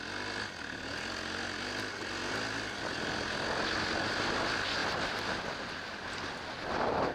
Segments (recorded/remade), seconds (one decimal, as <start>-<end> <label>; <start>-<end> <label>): 0.0-7.1 recorded